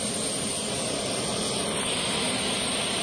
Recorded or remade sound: remade